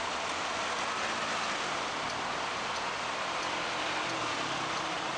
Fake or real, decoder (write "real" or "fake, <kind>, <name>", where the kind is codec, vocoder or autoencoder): real